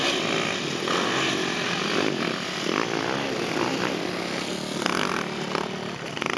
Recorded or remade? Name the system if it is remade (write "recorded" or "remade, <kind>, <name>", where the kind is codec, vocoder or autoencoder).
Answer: recorded